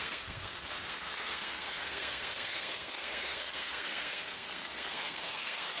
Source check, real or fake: fake